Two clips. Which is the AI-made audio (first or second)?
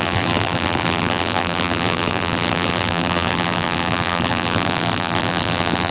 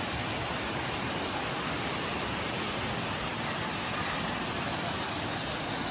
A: first